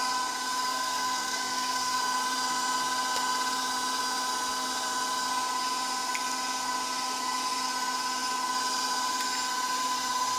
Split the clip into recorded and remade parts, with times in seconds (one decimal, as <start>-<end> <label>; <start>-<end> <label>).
0.0-0.7 recorded; 0.7-2.0 remade; 2.0-10.4 recorded